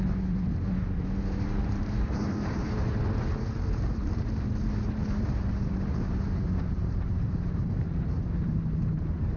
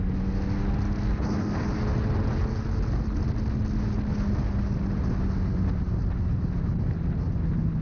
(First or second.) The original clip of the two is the second